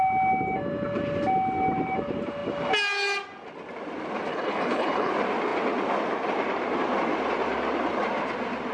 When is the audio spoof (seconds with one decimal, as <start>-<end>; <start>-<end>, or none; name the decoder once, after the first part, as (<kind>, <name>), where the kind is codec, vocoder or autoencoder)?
4.3-5.1 (codec, HILCodec)